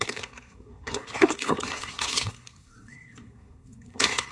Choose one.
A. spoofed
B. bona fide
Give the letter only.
A